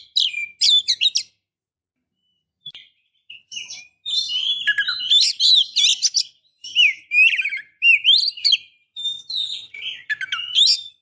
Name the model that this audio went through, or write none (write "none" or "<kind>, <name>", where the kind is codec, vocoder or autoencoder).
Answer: none